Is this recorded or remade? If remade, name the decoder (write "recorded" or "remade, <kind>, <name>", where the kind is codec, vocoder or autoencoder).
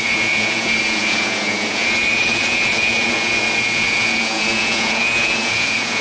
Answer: remade, vocoder, Vocos